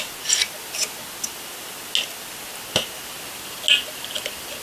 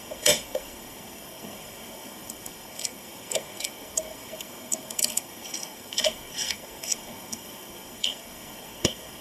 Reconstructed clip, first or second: second